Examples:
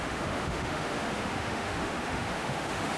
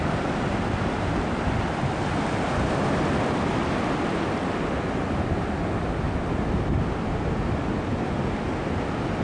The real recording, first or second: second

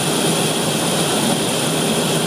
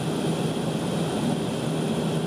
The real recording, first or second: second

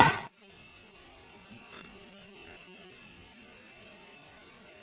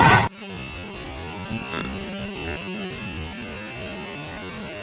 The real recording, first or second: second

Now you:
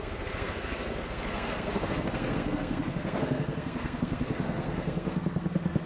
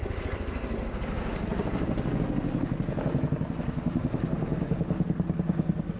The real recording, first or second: second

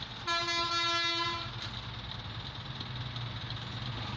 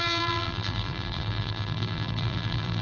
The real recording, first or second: first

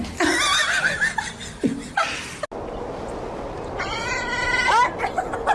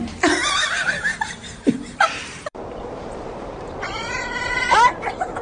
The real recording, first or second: first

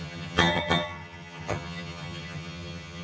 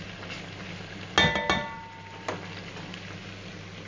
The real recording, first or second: second